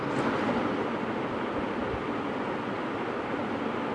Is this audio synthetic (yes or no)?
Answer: no